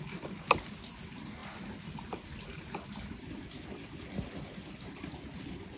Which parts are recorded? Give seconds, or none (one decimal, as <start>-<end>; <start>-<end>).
0.0-5.8